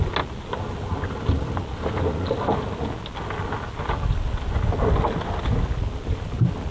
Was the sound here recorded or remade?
recorded